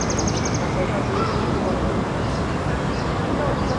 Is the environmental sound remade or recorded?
recorded